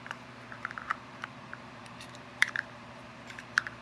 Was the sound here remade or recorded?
remade